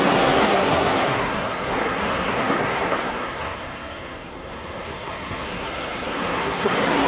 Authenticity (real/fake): fake